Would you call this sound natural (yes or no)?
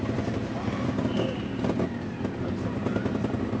yes